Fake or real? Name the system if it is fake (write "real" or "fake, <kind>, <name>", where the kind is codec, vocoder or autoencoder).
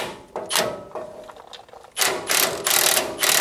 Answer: real